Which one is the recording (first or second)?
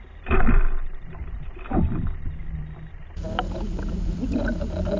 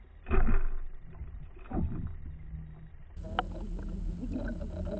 second